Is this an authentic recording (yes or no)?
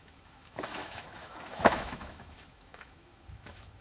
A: no